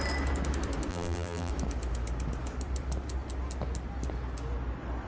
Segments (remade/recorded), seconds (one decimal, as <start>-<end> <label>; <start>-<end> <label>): 0.0-0.9 recorded; 0.9-1.5 remade; 1.5-5.1 recorded